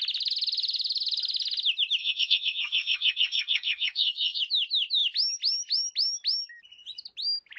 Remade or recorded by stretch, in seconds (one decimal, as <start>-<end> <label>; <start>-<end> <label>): 0.0-2.0 recorded; 2.0-4.4 remade; 4.4-7.6 recorded